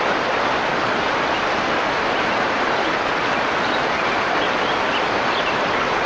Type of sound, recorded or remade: recorded